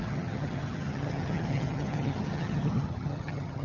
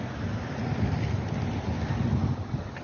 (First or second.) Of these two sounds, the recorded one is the second